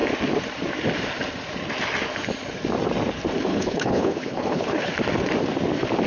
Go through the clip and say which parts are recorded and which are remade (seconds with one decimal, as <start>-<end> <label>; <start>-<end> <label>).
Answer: 0.0-3.5 recorded; 3.5-4.9 remade; 4.9-6.1 recorded